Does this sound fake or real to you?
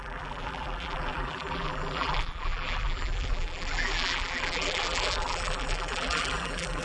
fake